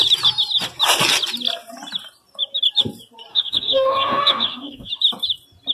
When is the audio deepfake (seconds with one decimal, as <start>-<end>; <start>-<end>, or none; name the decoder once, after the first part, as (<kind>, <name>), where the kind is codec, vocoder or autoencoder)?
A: 3.3-4.9 (codec, DAC)